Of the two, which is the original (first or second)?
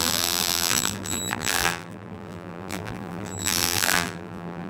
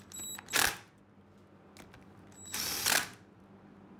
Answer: second